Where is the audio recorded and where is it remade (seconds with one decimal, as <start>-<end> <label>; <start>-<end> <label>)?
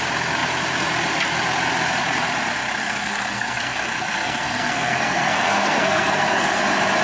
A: 0.0-2.8 recorded; 2.8-6.6 remade; 6.6-7.0 recorded